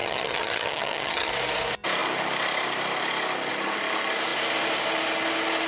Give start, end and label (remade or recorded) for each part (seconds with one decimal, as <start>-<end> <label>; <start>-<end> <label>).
0.0-1.3 remade; 1.3-5.7 recorded